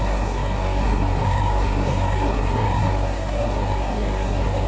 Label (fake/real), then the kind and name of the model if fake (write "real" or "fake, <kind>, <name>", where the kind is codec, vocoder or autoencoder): fake, codec, SNAC